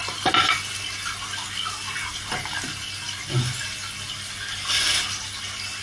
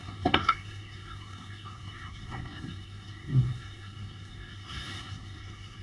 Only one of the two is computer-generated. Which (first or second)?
second